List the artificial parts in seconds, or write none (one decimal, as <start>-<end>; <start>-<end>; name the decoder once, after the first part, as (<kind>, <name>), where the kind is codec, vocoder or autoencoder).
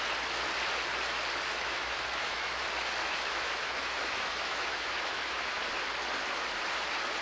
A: 1.5-2.6 (autoencoder, DAC-VAE); 3.0-5.6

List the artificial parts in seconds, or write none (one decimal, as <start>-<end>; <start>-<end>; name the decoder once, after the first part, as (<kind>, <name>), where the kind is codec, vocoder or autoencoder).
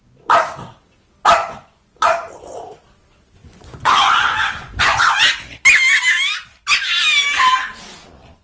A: 1.4-2.3 (vocoder, Vocos); 3.4-5.2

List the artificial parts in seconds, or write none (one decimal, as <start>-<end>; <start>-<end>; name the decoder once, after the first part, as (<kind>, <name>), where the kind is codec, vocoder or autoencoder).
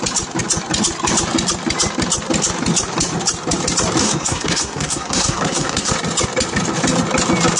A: 4.0-5.9 (codec, SNAC)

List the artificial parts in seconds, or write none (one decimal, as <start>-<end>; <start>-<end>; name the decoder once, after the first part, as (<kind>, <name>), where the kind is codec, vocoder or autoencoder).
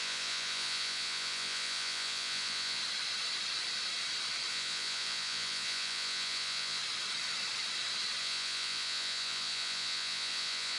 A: 0.0-2.8 (vocoder, Vocos); 4.5-6.8; 8.2-10.8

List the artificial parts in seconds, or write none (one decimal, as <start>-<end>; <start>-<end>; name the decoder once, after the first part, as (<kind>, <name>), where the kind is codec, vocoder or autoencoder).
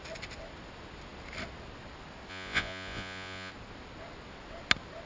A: 2.3-3.5 (vocoder, Vocos)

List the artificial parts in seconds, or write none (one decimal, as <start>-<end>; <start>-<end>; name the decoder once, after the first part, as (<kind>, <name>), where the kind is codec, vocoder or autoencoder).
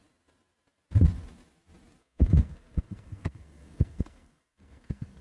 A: 2.0-5.2 (codec, SNAC)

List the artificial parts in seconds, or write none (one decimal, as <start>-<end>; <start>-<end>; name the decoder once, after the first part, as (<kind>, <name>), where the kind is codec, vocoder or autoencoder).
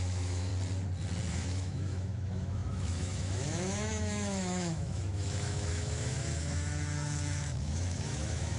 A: 0.0-0.5 (autoencoder, DAC-VAE); 1.3-8.6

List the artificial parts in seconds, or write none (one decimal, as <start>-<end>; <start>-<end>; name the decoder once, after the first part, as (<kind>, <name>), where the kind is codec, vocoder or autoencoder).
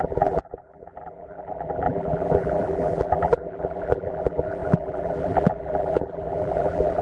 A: 0.0-7.0 (vocoder, BigVGAN v2)